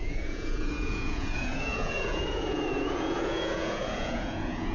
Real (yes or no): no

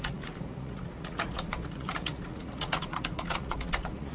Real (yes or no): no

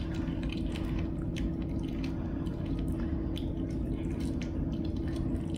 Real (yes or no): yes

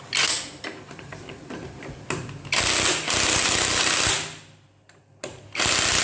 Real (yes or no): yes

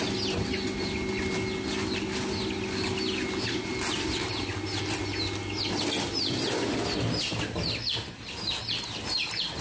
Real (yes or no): yes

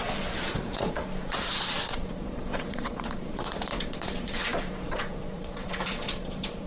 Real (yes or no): no